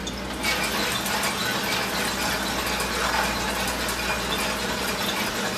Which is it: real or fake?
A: real